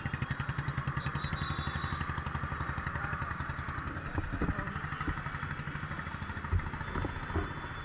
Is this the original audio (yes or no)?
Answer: yes